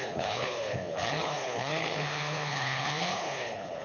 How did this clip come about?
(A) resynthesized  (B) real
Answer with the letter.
A